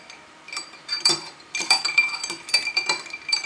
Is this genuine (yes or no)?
no